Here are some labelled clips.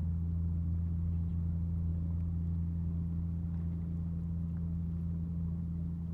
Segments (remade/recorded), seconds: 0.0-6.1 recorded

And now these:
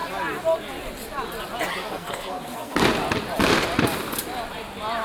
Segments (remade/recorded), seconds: 0.0-1.8 recorded; 1.8-2.8 remade; 2.8-5.0 recorded

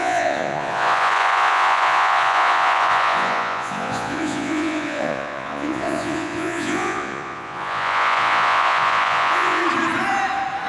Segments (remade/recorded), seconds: 0.0-9.6 remade; 9.6-10.7 recorded

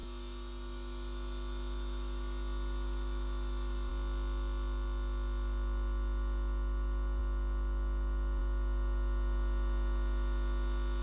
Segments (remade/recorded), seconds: 0.0-3.9 remade; 3.9-11.0 recorded

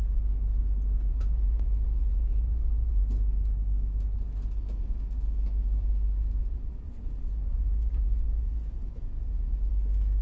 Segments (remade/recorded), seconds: 0.0-1.1 recorded; 1.1-3.0 remade; 3.0-6.4 recorded; 6.4-9.7 remade; 9.7-10.2 recorded

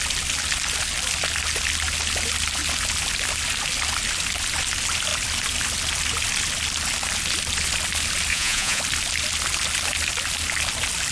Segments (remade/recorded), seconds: 0.0-8.3 recorded; 8.3-8.8 remade; 8.8-11.1 recorded

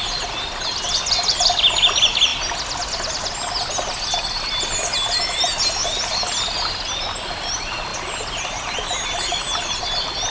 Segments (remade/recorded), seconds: 0.0-10.3 recorded